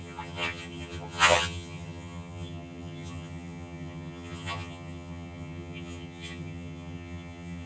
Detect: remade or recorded remade